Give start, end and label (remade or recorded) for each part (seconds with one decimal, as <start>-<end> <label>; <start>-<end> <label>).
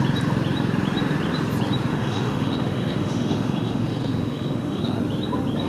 0.0-1.9 recorded; 1.9-5.0 remade; 5.0-5.7 recorded